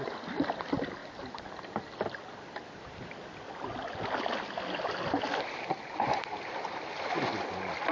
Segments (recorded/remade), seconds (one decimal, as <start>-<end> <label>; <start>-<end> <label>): 0.0-7.9 recorded